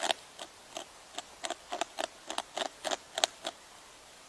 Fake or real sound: real